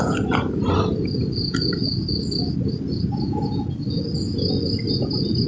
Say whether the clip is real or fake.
real